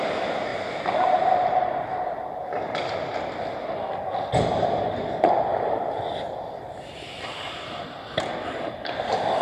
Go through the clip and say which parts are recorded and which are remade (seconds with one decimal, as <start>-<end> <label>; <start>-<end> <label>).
0.0-0.5 recorded; 0.5-1.5 remade; 1.5-5.5 recorded; 5.5-7.3 remade; 7.3-9.4 recorded